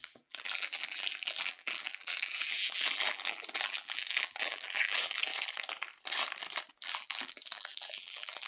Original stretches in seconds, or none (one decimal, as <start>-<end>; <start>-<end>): 5.3-6.8